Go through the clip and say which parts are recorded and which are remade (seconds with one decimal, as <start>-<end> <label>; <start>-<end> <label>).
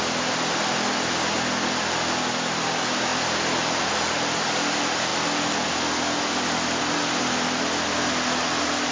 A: 0.0-8.9 recorded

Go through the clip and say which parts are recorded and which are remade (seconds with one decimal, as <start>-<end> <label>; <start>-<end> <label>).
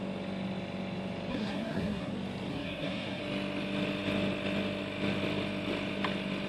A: 0.0-1.3 recorded; 1.3-2.1 remade; 2.1-2.5 recorded; 2.5-3.2 remade; 3.2-6.5 recorded